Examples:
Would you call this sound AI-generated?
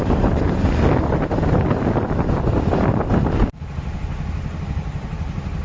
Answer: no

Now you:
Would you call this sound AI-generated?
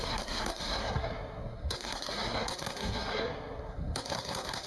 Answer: yes